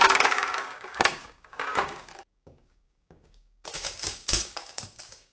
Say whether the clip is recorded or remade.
remade